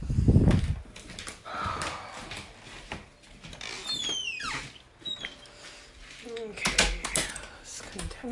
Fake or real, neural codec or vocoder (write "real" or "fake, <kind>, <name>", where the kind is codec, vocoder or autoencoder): real